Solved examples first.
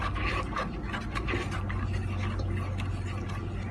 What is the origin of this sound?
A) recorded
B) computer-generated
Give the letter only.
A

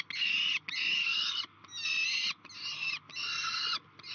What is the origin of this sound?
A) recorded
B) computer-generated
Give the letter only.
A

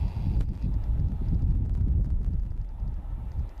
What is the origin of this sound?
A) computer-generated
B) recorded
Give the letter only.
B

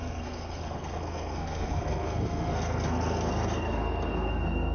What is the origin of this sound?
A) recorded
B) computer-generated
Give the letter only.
B